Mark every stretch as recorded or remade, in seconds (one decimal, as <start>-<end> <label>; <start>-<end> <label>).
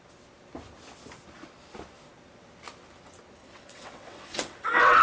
0.0-3.4 recorded; 3.4-5.0 remade